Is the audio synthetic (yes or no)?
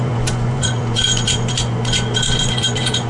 yes